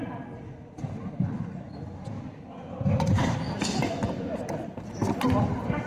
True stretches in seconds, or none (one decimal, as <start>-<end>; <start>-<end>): 0.0-5.9